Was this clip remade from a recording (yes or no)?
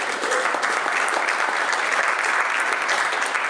no